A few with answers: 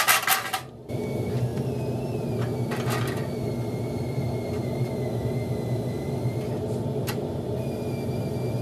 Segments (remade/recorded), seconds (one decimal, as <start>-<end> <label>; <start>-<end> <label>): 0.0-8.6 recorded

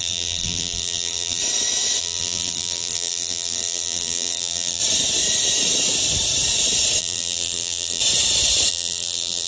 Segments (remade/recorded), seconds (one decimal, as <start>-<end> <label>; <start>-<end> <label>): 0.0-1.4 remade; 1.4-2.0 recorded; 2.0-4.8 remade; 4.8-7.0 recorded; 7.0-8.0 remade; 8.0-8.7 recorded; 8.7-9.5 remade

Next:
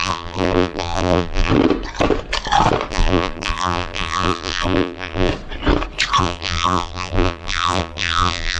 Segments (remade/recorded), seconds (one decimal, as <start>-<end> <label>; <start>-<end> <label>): 0.0-1.5 remade; 1.5-2.9 recorded; 2.9-5.3 remade; 5.3-6.2 recorded; 6.2-8.6 remade

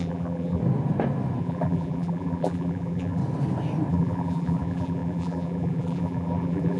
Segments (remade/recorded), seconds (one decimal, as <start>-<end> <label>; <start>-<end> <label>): 0.0-0.6 remade; 0.6-1.4 recorded; 1.4-3.2 remade; 3.2-3.9 recorded; 3.9-6.8 remade

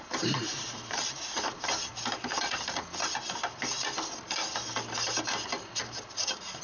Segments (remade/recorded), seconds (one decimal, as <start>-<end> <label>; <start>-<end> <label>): 0.0-1.9 remade; 1.9-5.8 recorded; 5.8-6.6 remade